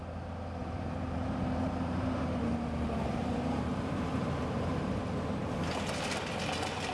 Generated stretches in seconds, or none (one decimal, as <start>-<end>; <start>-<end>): 0.6-4.7